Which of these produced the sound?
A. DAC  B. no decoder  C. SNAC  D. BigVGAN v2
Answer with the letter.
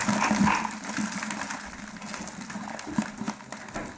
B